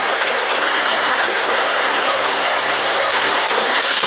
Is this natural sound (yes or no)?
no